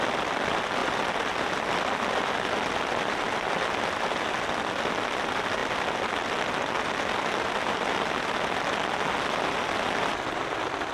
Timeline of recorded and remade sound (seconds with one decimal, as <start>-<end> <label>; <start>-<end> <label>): 0.0-5.6 remade; 5.6-10.0 recorded; 10.0-10.9 remade